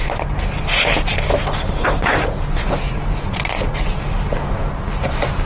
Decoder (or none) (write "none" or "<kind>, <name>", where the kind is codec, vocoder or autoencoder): none